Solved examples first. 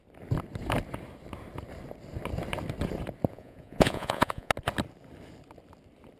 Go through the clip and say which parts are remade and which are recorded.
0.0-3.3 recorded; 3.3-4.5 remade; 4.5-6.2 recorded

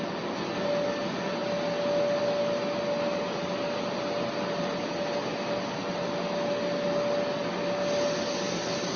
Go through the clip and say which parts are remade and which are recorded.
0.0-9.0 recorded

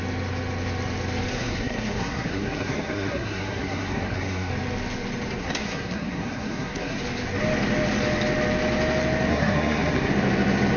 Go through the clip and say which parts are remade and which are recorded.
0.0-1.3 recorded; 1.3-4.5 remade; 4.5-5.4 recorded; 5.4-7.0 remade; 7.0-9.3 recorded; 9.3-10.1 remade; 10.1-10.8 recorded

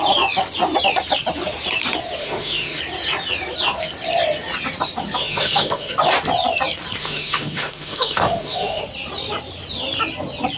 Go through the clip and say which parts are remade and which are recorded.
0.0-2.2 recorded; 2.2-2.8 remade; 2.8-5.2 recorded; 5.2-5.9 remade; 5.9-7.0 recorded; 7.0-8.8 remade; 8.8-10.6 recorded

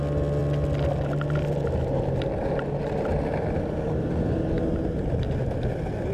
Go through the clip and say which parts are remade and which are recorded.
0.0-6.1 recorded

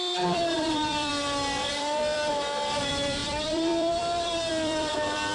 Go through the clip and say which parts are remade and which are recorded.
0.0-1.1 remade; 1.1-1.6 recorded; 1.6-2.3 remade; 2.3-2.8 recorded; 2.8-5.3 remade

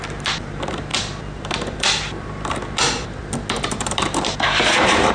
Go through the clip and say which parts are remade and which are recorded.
0.0-0.9 remade; 0.9-1.8 recorded; 1.8-3.2 remade; 3.2-3.7 recorded; 3.7-5.1 remade